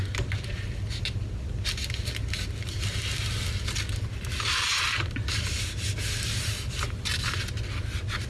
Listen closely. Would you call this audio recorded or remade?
recorded